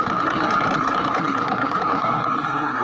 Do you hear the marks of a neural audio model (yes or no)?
yes